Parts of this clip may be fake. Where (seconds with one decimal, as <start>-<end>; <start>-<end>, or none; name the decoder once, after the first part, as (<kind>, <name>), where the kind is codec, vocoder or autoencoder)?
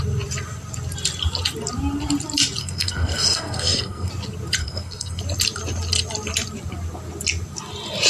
2.6-4.1 (codec, SNAC); 4.6-5.2